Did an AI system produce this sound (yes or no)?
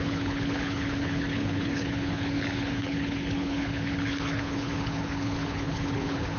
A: yes